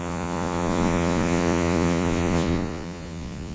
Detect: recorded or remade remade